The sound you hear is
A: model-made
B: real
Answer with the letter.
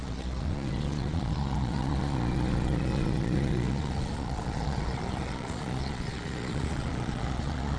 A